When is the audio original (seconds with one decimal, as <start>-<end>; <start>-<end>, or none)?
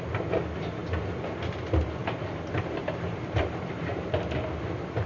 0.0-2.0; 4.1-5.1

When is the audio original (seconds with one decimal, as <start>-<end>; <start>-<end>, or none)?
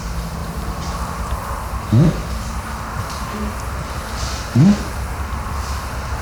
0.0-0.4; 1.3-6.2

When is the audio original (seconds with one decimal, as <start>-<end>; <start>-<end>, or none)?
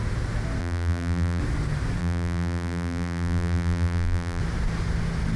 0.0-0.6; 1.4-2.0; 4.4-5.4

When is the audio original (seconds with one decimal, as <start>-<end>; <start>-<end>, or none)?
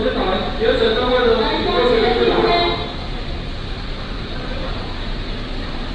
0.8-2.1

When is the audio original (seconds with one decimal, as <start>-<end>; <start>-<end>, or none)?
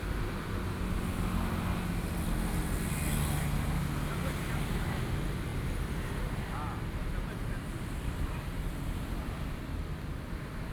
0.0-5.5; 6.9-10.7